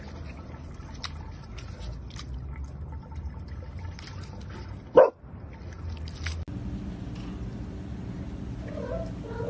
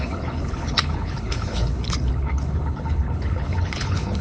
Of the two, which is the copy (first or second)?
second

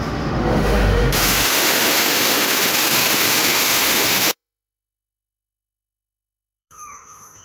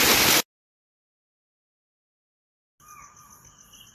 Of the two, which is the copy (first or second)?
first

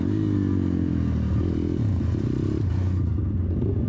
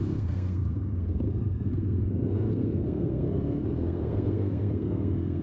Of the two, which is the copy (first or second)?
second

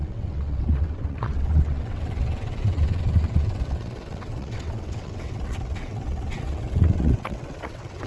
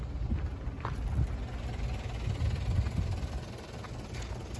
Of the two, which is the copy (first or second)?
first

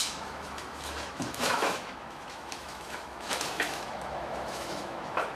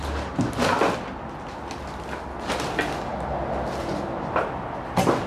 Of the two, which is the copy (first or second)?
first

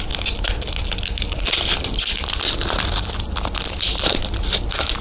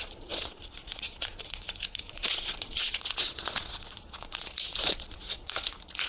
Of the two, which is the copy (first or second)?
second